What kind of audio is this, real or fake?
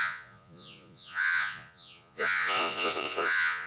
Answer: fake